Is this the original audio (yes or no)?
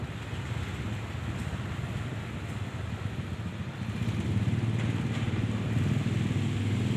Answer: yes